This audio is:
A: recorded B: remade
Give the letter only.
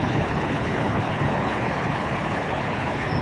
B